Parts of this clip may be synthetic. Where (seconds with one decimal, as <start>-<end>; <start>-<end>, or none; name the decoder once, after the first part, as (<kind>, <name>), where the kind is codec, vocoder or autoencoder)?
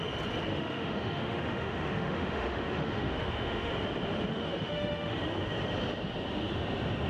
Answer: 0.5-3.7 (autoencoder, DAC-VAE); 4.3-5.2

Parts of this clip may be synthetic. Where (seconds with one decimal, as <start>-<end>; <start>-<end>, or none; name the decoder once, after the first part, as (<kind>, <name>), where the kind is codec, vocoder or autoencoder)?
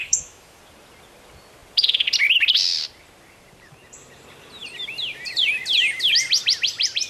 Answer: 0.0-0.6 (autoencoder, DAC-VAE)